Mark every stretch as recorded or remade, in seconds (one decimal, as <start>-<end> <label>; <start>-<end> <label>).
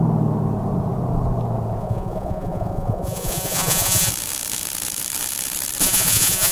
0.0-1.8 recorded; 1.8-4.1 remade; 4.1-5.8 recorded; 5.8-6.5 remade